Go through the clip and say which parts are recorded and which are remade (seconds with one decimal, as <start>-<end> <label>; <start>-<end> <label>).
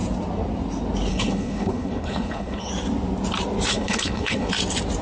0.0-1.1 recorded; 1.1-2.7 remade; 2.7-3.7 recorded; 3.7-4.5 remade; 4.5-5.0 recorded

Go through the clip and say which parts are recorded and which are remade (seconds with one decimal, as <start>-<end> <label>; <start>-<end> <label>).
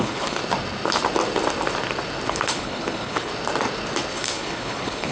0.0-0.4 remade; 0.4-2.3 recorded; 2.3-3.3 remade; 3.3-4.1 recorded; 4.1-5.1 remade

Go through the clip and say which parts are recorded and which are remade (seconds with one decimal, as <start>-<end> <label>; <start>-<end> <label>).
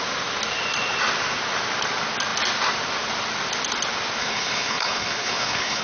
0.0-4.2 recorded; 4.2-5.8 remade